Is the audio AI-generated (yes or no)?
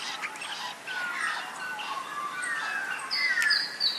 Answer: no